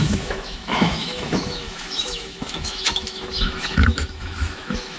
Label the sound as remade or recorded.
remade